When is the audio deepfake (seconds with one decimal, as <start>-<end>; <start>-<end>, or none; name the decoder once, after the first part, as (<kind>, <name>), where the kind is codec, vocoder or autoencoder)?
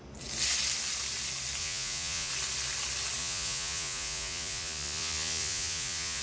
1.6-2.3 (vocoder, Vocos); 3.2-6.2